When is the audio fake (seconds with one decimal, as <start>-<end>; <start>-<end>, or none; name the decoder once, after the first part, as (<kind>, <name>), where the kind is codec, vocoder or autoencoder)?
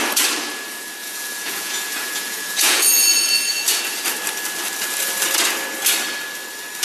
1.0-3.8 (vocoder, Vocos)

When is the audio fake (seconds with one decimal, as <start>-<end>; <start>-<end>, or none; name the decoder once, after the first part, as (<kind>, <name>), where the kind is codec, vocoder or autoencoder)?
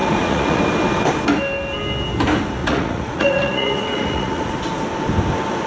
0.0-0.6 (vocoder, Vocos); 2.6-4.5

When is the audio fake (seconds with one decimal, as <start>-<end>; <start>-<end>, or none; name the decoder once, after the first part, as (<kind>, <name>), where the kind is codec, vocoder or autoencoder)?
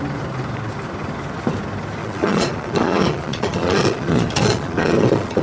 2.0-5.4 (vocoder, Vocos)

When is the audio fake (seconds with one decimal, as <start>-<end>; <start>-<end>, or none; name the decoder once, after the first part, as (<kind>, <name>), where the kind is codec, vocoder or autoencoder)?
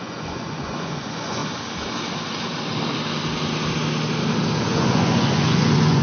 0.0-1.4 (vocoder, Vocos); 4.6-6.0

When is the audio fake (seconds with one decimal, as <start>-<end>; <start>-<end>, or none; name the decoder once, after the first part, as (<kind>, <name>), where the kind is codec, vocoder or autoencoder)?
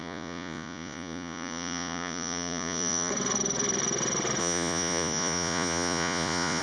0.0-3.1 (vocoder, Vocos); 4.4-6.6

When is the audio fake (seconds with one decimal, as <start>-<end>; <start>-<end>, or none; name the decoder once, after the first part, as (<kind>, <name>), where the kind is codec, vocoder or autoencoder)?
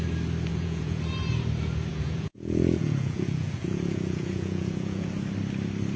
0.5-1.0 (vocoder, Vocos); 1.9-5.1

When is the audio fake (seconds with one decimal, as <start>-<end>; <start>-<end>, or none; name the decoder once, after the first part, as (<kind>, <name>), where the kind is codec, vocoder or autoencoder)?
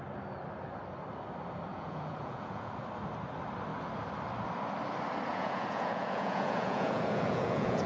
1.7-2.7 (vocoder, Vocos); 5.3-7.9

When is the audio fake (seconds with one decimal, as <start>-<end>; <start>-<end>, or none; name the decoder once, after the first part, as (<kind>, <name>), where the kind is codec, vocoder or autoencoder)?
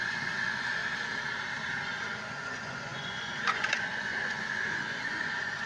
0.0-0.8 (vocoder, Vocos); 1.8-5.7